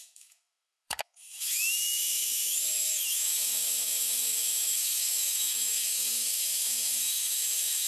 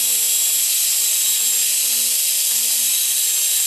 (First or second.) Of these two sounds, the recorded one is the second